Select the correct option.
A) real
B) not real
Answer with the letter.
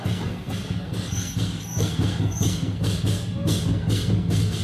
B